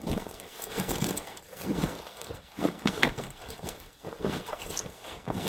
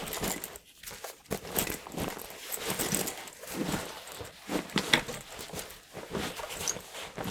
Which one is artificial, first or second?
first